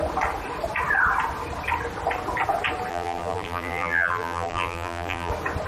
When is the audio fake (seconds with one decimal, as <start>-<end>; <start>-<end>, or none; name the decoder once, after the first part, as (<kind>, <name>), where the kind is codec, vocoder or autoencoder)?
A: 2.9-5.3 (vocoder, BigVGAN v2)

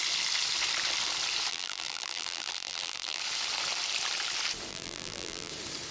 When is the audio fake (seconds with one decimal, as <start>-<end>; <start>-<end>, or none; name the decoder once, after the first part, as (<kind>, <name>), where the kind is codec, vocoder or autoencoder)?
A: 1.5-3.2 (vocoder, BigVGAN v2); 4.7-5.5

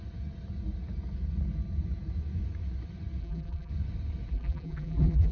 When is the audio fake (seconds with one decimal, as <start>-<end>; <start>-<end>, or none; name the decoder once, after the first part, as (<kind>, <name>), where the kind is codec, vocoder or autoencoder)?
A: 3.2-3.7 (vocoder, BigVGAN v2); 4.3-5.3

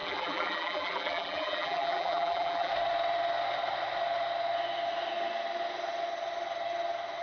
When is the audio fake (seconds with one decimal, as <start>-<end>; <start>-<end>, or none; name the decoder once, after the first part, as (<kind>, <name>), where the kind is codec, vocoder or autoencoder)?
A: 0.0-2.7 (vocoder, BigVGAN v2)

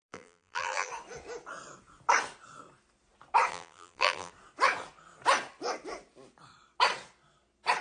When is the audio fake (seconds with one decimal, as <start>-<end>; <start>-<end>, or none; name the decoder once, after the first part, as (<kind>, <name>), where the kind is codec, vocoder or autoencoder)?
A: 0.0-0.9 (vocoder, BigVGAN v2); 3.5-4.3

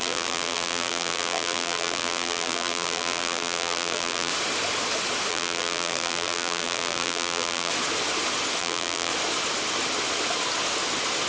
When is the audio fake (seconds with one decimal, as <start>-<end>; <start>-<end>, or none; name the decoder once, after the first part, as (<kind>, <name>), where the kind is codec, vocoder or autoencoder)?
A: 0.0-4.3 (vocoder, BigVGAN v2); 5.3-7.7; 8.6-9.1

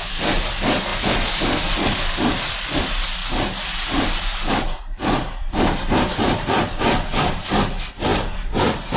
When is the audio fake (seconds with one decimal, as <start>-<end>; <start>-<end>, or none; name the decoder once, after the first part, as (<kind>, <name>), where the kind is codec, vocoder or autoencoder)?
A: 3.2-7.5 (vocoder, BigVGAN v2); 8.1-9.0